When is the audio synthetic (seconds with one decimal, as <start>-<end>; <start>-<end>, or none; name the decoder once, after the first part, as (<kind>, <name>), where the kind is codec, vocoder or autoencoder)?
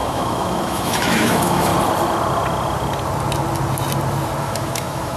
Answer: 0.0-1.7 (autoencoder, DAC-VAE); 4.4-5.2